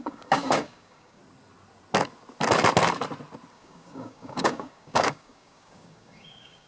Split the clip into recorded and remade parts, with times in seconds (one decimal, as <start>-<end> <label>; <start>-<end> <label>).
0.0-1.2 remade; 1.2-3.5 recorded; 3.5-6.7 remade